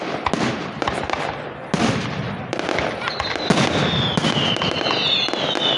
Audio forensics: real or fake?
real